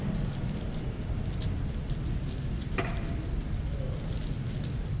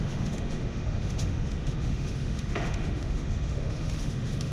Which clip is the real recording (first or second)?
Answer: first